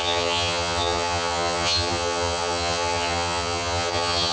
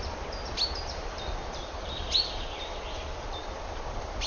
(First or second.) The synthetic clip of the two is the first